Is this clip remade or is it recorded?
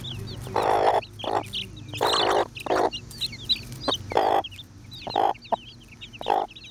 recorded